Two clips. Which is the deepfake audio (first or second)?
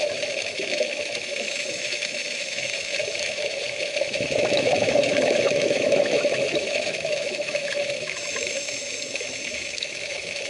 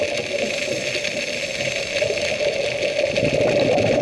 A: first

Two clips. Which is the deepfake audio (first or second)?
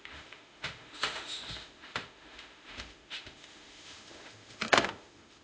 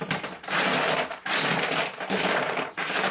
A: first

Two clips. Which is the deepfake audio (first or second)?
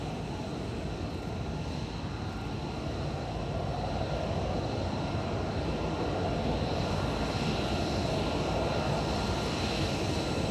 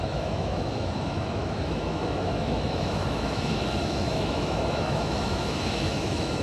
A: second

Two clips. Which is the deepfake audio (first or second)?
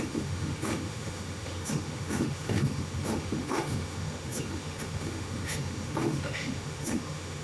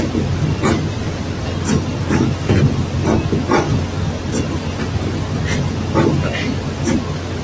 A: first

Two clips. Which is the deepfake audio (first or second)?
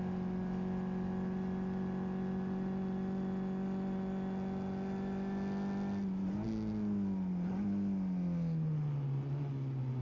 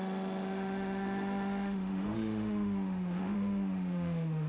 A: second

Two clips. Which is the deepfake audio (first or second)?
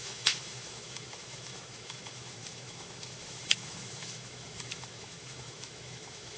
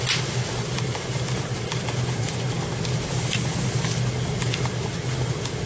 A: first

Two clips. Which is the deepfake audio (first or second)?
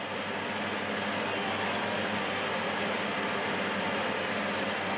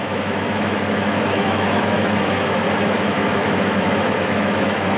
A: second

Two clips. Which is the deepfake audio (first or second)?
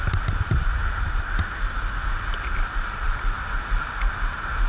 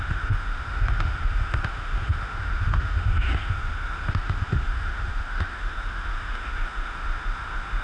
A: second